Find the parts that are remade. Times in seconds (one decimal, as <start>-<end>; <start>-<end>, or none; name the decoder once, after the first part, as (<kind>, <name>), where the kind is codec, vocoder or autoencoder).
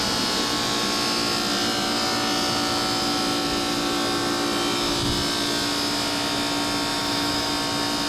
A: 6.9-7.5 (autoencoder, DAC-VAE)